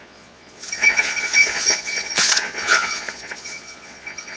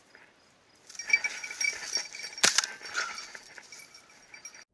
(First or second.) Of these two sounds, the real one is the second